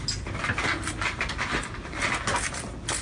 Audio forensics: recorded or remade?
recorded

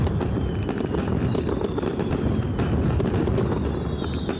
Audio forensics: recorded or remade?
recorded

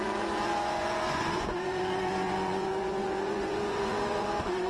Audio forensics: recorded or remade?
remade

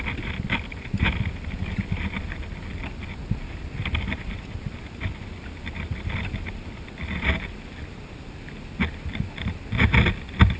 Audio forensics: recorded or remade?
recorded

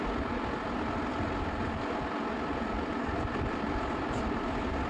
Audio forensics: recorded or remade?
recorded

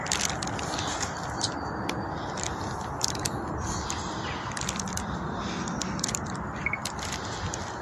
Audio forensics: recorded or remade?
recorded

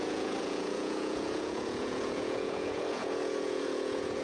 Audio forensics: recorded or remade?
remade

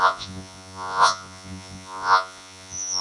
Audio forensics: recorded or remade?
remade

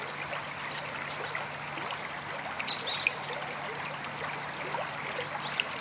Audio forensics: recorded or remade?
recorded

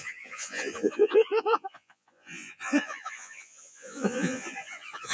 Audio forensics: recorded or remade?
remade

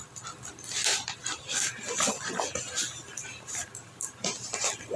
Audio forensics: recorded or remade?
recorded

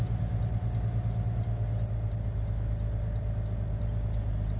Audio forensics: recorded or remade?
recorded